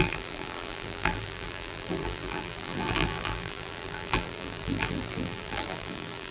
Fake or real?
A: fake